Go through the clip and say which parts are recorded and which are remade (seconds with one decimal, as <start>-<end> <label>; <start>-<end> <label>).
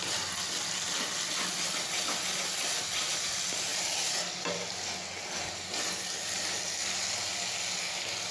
0.0-3.7 recorded; 3.7-4.3 remade; 4.3-8.3 recorded